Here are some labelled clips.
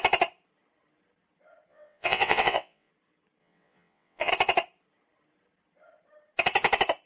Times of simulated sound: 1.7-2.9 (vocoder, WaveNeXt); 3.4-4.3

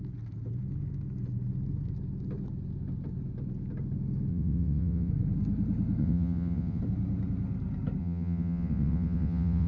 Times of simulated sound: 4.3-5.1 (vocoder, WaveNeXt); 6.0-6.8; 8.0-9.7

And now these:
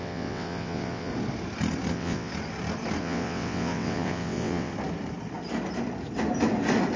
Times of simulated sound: 0.0-1.1 (vocoder, WaveNeXt); 1.9-2.3; 3.0-4.7

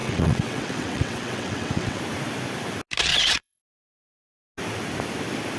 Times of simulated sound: 0.0-2.0 (vocoder, WaveNeXt); 3.1-3.6